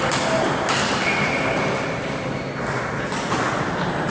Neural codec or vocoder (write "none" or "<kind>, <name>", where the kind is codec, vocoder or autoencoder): none